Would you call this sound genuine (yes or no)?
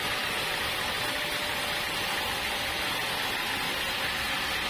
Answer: yes